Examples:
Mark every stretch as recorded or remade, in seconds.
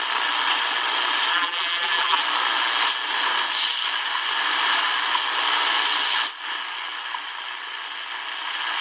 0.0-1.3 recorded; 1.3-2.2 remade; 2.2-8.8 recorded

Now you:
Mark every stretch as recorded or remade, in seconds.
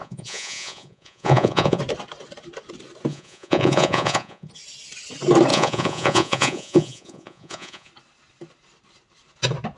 0.0-1.8 remade; 1.8-3.1 recorded; 3.1-4.5 remade; 4.5-5.5 recorded; 5.5-7.9 remade; 7.9-9.8 recorded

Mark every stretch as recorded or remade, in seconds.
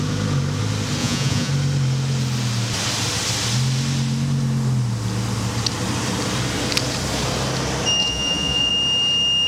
0.0-1.0 recorded; 1.0-1.5 remade; 1.5-8.0 recorded; 8.0-8.7 remade; 8.7-9.5 recorded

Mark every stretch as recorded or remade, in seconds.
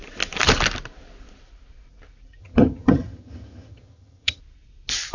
0.0-2.4 recorded; 2.4-4.4 remade; 4.4-5.1 recorded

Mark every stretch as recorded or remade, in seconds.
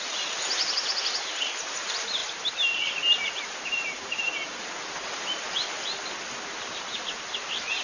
0.0-7.8 recorded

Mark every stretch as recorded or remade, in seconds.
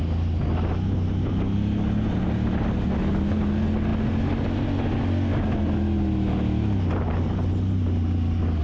0.0-8.6 recorded